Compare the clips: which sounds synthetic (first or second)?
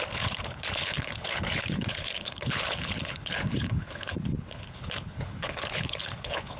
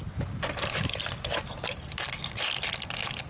first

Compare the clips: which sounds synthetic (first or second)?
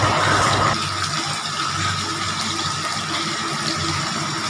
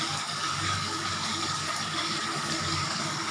second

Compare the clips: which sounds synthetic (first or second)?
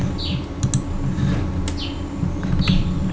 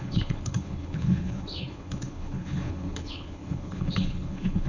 second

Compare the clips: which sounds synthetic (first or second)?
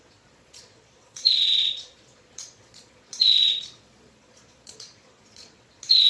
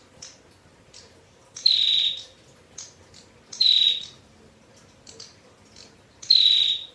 first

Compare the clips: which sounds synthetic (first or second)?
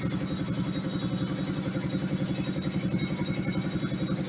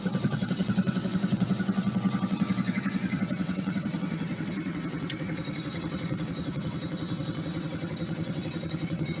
second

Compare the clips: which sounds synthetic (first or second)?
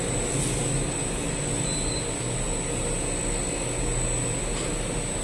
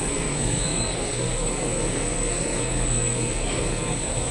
second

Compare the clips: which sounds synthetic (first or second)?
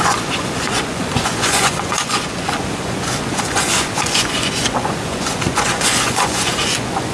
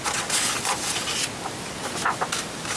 first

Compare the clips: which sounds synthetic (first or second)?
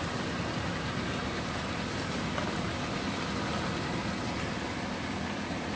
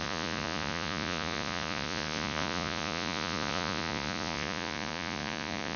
second